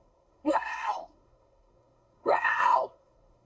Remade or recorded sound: remade